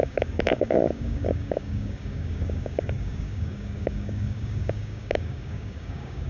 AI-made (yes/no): yes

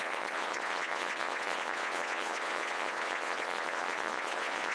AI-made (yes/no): yes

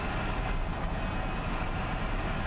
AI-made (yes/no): no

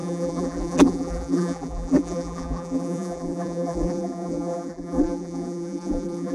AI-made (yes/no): yes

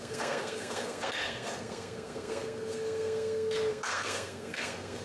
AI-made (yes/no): yes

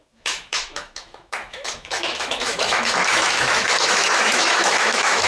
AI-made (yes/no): yes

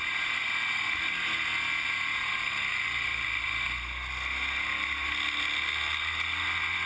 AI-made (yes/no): no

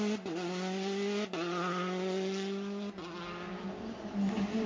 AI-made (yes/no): no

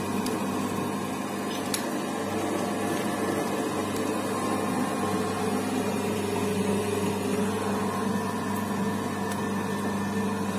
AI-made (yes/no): no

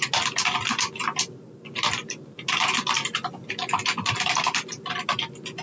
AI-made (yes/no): no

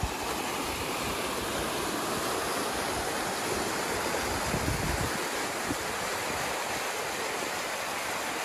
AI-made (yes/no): no